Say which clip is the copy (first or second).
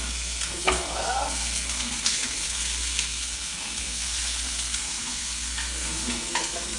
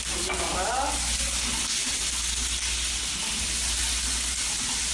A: first